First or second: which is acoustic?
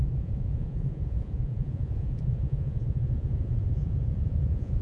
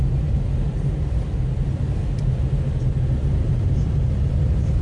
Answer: second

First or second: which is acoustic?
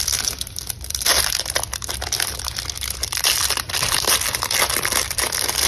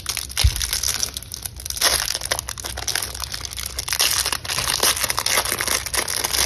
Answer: second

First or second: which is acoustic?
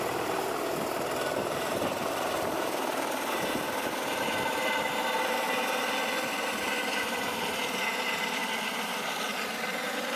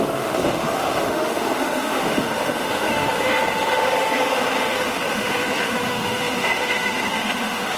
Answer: first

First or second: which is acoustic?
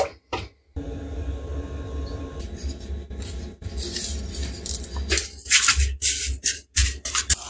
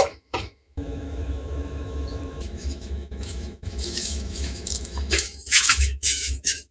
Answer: first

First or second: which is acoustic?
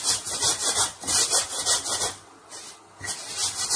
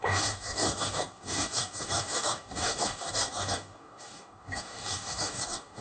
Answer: first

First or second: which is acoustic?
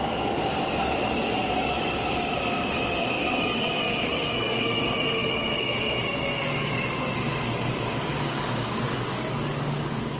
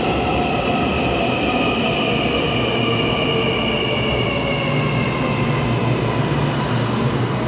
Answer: second